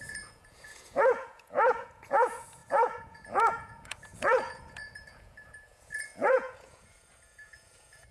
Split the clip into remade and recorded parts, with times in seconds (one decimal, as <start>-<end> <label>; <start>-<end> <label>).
0.0-8.1 remade